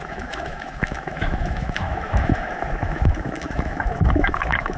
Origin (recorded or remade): remade